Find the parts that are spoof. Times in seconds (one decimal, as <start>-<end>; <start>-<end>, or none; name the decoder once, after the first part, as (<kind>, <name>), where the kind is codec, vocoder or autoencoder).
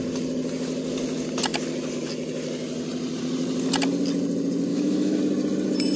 4.7-5.2 (autoencoder, DAC-VAE)